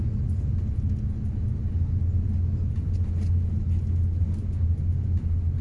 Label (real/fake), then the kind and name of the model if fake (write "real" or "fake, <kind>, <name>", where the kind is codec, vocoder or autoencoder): real